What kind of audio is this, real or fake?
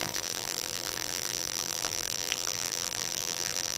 fake